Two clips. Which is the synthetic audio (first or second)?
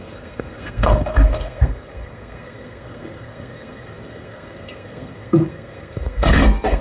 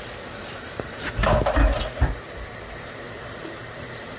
first